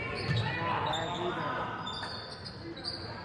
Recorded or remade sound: recorded